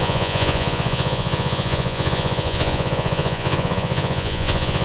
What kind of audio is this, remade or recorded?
remade